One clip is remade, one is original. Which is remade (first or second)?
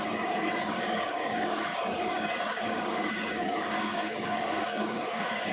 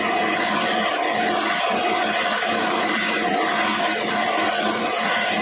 first